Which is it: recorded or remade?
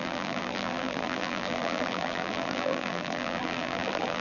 remade